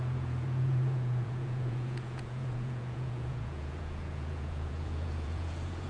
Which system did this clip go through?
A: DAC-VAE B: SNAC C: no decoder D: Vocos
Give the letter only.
D